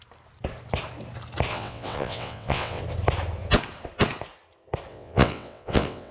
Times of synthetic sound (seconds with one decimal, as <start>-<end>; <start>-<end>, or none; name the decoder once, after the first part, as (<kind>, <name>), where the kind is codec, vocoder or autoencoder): 1.5-2.8 (vocoder, WaveNeXt); 4.9-6.1